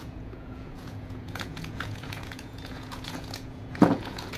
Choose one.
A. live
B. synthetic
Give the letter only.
B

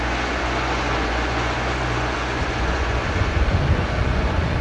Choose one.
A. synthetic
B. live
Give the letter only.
A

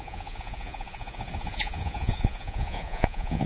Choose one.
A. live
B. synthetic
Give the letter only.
B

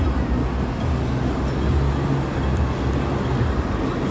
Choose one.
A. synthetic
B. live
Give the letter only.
B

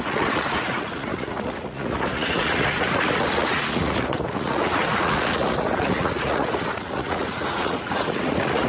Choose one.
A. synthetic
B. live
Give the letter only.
A